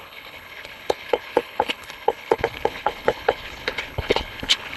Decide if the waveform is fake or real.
fake